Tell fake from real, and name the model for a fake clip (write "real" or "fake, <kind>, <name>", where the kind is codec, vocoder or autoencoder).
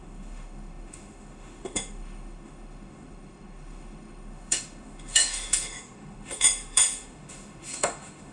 fake, autoencoder, DAC-VAE